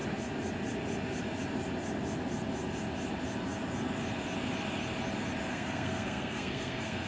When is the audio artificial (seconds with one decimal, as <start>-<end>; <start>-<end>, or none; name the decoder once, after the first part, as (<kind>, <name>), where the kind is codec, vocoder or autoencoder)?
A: 5.5-7.1 (codec, SNAC)